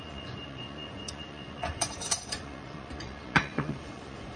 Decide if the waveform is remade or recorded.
remade